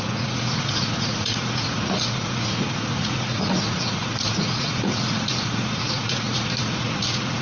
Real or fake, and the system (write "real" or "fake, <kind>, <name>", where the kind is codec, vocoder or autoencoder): fake, vocoder, Vocos